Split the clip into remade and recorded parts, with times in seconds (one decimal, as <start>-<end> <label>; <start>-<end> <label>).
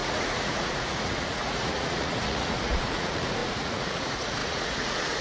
0.0-5.2 remade